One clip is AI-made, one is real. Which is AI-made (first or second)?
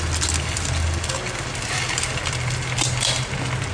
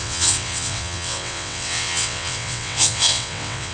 second